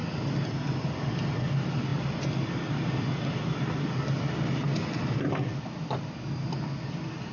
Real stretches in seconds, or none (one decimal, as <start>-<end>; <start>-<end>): 0.0-7.3